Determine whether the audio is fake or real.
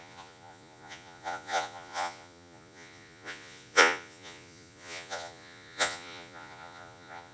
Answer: fake